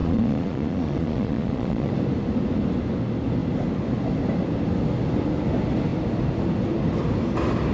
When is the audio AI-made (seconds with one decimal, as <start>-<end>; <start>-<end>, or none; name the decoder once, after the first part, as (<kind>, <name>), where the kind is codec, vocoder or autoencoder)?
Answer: 0.0-1.9 (vocoder, Vocos)